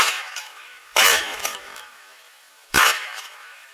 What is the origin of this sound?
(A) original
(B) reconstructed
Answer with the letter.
B